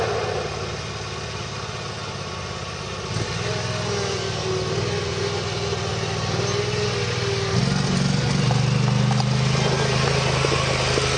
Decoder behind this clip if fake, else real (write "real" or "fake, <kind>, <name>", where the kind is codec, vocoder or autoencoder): real